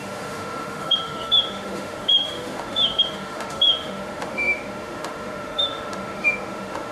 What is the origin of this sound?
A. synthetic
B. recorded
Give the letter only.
A